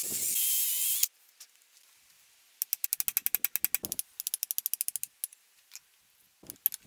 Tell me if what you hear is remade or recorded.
recorded